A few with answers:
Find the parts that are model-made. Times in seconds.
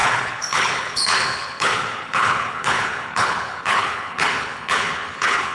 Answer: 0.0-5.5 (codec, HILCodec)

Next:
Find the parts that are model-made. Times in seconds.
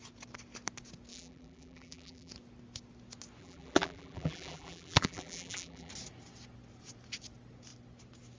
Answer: 1.1-2.3 (vocoder, BigVGAN v2); 3.4-5.9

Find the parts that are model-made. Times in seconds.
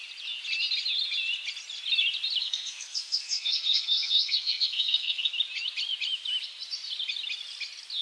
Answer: 2.4-5.3 (codec, SNAC)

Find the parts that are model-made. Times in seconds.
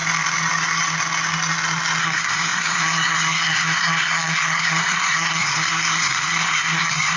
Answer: 2.0-7.2 (codec, SNAC)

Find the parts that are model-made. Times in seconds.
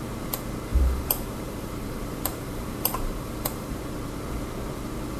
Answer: 0.7-3.8 (vocoder, BigVGAN v2)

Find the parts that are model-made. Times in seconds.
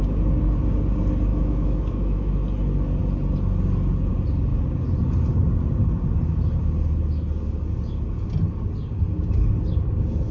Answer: 1.3-2.3 (autoencoder, DAC-VAE)